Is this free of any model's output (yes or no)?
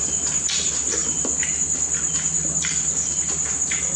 yes